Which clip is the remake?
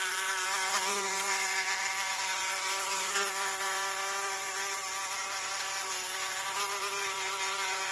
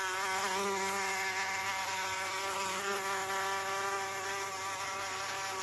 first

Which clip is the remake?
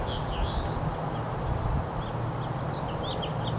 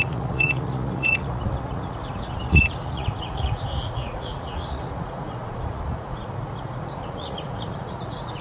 second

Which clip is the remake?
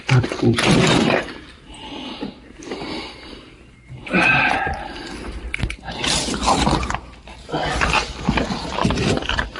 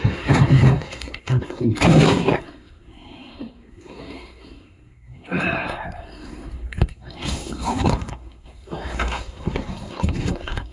second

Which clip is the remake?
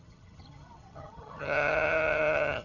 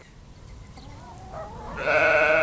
first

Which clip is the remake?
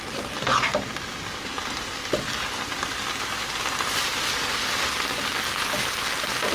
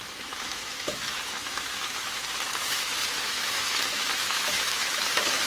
second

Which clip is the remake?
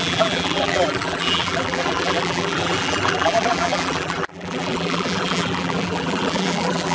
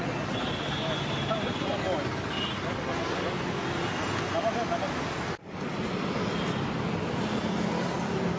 first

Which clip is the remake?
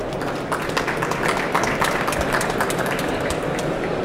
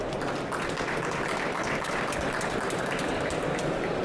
second